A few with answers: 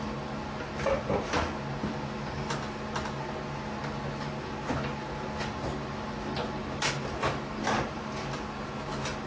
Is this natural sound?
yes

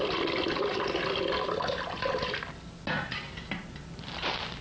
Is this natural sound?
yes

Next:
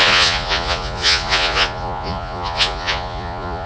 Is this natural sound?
no